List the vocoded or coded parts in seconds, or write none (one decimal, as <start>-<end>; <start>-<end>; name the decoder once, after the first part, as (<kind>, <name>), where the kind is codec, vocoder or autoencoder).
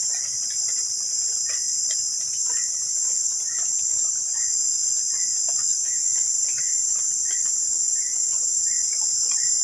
none